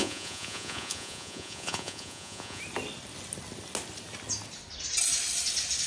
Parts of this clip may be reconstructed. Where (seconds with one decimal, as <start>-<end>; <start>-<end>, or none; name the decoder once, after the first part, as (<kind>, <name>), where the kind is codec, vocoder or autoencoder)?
0.0-2.6 (vocoder, Vocos)